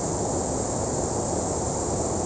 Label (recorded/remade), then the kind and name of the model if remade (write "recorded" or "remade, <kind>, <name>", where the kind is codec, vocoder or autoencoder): recorded